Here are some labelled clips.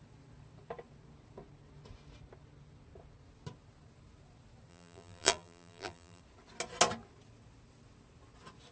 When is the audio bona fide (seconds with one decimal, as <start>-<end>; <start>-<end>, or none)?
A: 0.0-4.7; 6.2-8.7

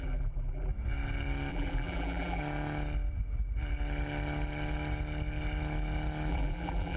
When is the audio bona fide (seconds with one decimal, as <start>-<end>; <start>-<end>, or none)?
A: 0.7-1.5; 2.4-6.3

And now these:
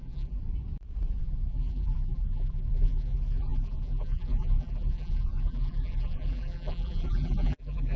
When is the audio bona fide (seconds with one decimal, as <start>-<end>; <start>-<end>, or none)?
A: 0.4-1.2

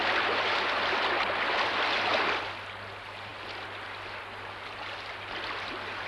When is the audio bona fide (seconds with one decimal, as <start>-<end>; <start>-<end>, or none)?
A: 0.0-6.1

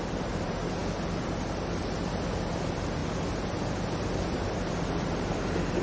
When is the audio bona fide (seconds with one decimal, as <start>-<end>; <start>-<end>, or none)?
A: none